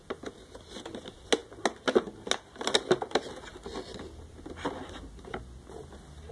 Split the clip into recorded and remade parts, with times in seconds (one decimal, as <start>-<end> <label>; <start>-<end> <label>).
0.0-6.3 recorded